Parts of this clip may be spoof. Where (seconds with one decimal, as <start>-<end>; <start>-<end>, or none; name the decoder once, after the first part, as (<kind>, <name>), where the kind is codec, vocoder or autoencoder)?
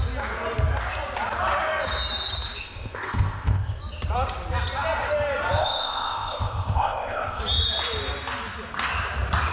2.6-3.8 (codec, ZipCodec); 5.6-7.4